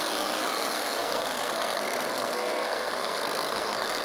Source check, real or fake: fake